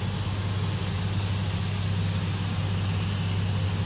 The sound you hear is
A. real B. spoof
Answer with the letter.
A